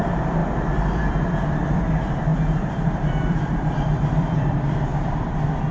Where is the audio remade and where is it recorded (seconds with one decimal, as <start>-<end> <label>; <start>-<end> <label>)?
0.0-0.4 remade; 0.4-1.0 recorded; 1.0-4.9 remade; 4.9-5.7 recorded